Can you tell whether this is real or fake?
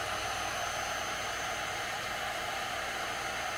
real